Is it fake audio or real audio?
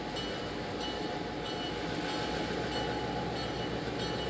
real